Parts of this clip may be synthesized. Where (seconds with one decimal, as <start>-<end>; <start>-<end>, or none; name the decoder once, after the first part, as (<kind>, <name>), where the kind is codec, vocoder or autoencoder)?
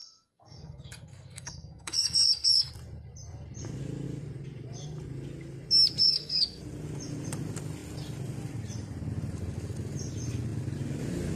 0.0-2.7 (codec, SNAC); 6.0-6.6